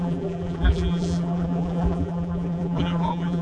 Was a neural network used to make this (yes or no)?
yes